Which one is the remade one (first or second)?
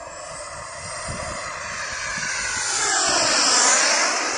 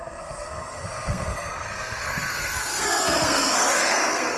second